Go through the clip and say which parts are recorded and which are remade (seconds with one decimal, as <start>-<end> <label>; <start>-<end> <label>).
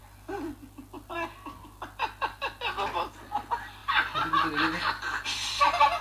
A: 0.0-6.0 recorded